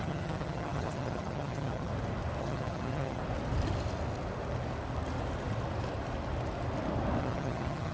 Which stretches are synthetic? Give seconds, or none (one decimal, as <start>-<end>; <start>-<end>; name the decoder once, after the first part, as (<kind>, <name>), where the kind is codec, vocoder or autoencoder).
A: 0.0-1.9 (vocoder, HiFi-GAN); 2.4-3.2; 7.2-7.9